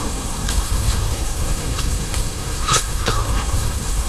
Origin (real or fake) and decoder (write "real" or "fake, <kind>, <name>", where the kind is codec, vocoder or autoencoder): fake, codec, SNAC